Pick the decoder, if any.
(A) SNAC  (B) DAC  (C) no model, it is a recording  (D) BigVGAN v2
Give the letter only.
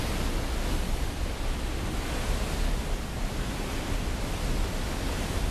C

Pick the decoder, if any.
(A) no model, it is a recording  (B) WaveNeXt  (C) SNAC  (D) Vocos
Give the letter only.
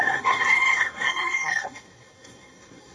C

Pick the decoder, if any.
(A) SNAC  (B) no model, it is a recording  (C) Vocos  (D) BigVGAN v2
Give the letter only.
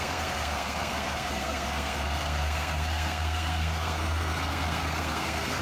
A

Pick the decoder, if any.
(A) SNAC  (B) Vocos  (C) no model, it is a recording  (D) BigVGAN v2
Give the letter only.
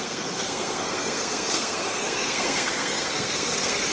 A